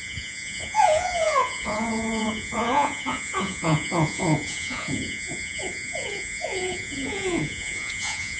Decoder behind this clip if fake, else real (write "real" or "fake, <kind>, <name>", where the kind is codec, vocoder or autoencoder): fake, vocoder, Vocos